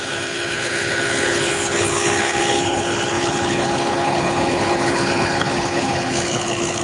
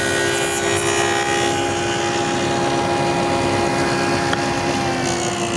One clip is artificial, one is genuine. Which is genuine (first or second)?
second